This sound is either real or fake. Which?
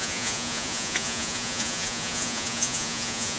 fake